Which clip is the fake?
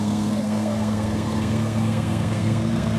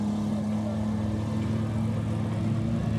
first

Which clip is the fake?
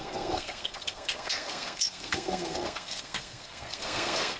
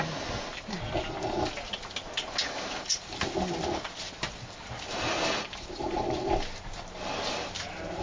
first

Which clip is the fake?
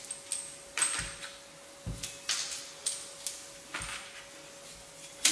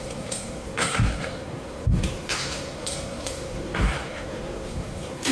second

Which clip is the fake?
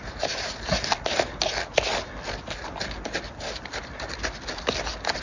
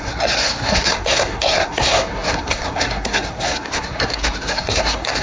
second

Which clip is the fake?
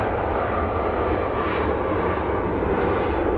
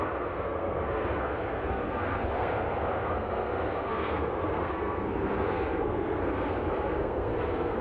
second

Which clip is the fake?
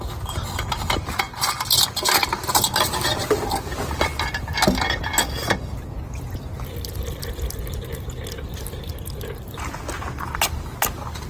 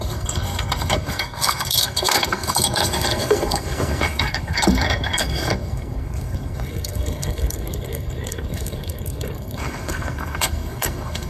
second